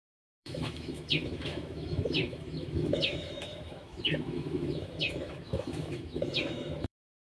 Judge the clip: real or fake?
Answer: fake